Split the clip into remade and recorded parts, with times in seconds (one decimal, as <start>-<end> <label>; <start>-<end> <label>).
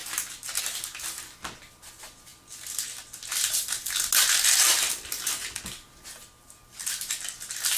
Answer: 0.0-7.8 recorded